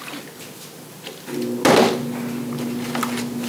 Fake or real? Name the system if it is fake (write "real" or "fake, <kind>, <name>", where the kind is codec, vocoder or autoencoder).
real